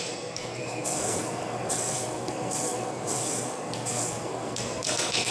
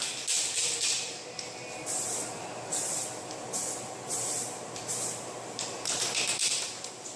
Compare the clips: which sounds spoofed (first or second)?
first